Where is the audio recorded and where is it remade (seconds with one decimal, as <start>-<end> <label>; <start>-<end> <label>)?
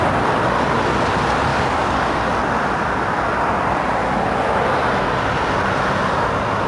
0.0-1.5 recorded; 1.5-2.4 remade; 2.4-6.7 recorded